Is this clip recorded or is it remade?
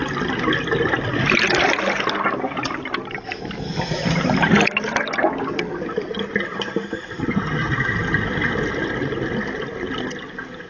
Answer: recorded